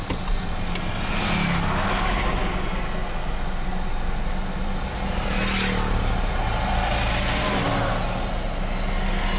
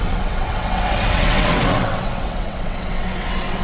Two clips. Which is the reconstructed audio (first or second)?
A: second